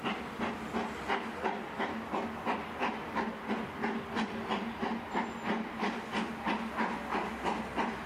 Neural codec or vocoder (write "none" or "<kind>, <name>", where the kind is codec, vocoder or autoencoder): none